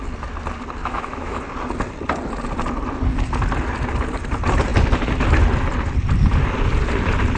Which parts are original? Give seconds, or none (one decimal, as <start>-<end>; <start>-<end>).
0.0-0.8; 1.4-7.4